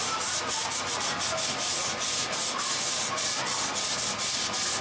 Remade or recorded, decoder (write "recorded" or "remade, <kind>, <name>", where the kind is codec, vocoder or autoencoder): recorded